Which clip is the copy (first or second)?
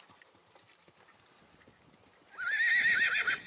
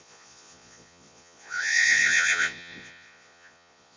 second